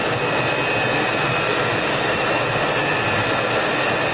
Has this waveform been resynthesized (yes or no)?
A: no